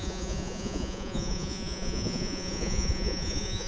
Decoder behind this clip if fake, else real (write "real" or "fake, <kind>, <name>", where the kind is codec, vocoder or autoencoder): fake, vocoder, Vocos